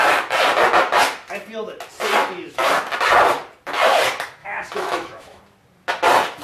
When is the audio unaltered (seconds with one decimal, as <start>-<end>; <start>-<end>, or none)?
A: 0.0-2.2; 2.7-4.4; 5.4-6.4